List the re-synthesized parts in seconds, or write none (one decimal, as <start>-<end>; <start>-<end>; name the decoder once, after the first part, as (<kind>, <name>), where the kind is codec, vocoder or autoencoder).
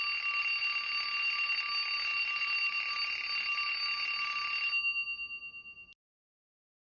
2.1-2.9 (vocoder, BigVGAN v2)